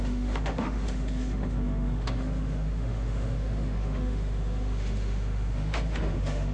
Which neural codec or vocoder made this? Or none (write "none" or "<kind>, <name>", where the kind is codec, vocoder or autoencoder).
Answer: autoencoder, DAC-VAE